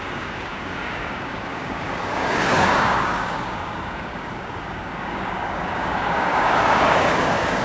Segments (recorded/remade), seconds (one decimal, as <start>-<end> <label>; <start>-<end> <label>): 0.0-7.6 remade